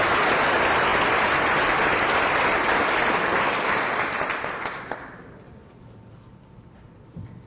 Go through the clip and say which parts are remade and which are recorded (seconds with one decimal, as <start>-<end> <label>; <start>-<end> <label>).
0.0-7.5 recorded